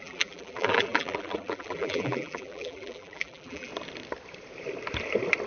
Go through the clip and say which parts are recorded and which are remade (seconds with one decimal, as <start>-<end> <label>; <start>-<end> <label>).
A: 0.0-3.7 remade; 3.7-5.5 recorded